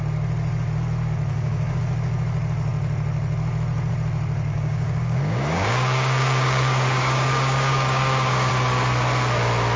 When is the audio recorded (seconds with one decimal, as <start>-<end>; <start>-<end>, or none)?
0.0-1.3; 1.8-4.5; 8.5-9.8